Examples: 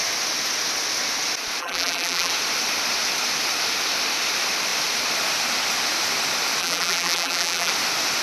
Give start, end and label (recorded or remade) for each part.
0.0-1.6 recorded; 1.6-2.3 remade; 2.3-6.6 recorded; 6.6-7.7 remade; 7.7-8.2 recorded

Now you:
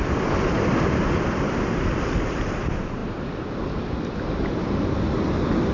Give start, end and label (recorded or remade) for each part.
0.0-5.7 remade

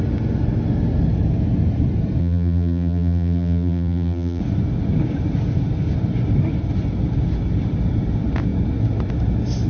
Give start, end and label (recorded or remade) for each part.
0.0-2.2 recorded; 2.2-4.4 remade; 4.4-9.7 recorded